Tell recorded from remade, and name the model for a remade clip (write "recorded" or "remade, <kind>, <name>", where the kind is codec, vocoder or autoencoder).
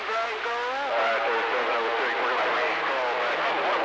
recorded